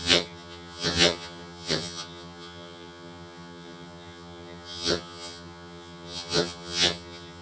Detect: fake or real fake